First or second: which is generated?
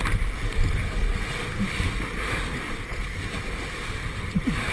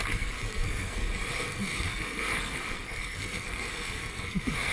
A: second